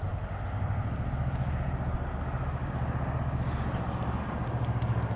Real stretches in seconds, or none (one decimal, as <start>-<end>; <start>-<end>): 0.0-5.2